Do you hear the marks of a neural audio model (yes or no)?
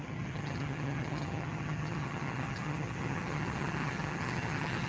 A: yes